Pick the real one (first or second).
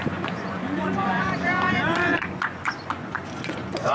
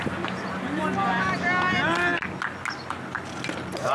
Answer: second